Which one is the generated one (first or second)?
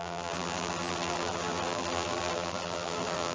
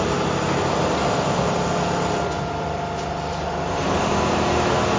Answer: first